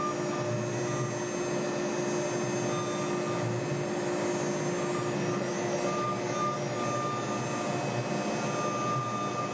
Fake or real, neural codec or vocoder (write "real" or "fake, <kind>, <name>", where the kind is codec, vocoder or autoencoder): real